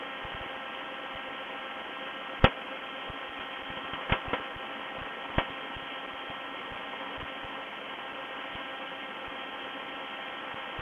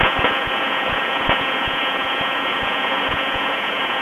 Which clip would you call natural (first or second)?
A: first